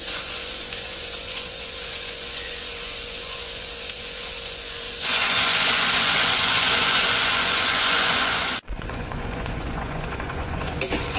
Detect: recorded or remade remade